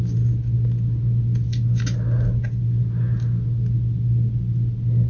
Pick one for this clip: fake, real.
real